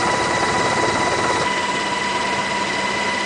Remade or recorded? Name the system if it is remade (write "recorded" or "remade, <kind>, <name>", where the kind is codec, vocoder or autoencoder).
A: recorded